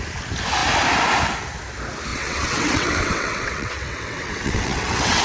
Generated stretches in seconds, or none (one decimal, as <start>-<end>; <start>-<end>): 2.1-5.2